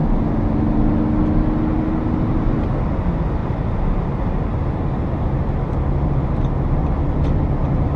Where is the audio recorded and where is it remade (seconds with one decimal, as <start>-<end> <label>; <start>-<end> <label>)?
0.0-6.8 recorded; 6.8-7.4 remade; 7.4-8.0 recorded